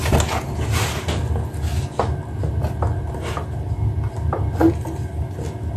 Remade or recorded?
recorded